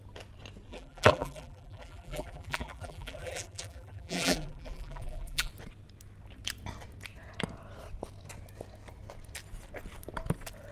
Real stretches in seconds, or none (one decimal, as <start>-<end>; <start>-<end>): 0.0-0.7; 5.5-10.7